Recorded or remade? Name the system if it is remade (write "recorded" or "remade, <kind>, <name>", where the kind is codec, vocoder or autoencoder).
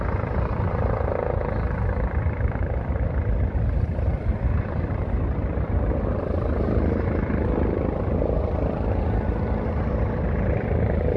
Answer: recorded